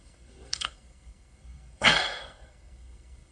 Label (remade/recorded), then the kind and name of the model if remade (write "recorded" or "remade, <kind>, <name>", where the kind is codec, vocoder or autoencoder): remade, codec, SNAC